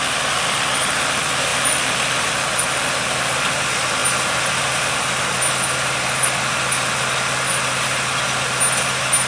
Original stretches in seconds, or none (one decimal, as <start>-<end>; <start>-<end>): 0.0-9.3